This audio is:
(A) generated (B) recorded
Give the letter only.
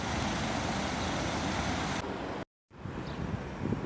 B